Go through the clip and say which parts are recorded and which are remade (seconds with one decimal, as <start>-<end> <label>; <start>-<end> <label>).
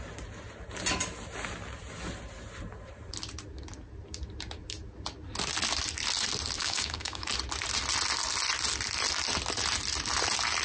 0.0-6.6 recorded; 6.6-7.3 remade; 7.3-10.6 recorded